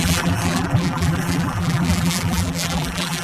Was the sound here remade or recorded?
remade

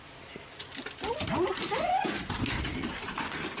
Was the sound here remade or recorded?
recorded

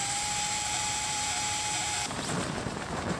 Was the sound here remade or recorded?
remade